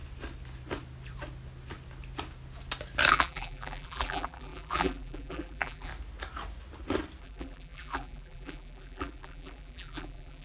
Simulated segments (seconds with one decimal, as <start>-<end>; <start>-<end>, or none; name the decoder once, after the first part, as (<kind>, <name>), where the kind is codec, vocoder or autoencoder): 3.1-5.9 (vocoder, BigVGAN v2); 7.2-10.4